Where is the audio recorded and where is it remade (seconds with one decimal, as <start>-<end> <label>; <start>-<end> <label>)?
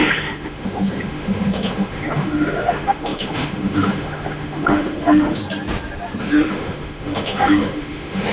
0.0-5.4 remade; 5.4-6.2 recorded; 6.2-8.3 remade